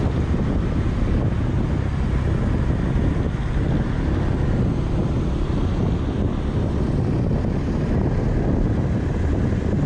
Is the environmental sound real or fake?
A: real